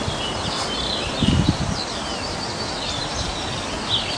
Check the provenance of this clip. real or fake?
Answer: real